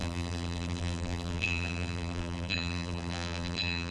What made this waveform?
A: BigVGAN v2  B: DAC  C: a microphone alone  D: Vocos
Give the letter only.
A